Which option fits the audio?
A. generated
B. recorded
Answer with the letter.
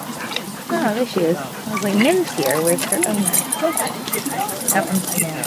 A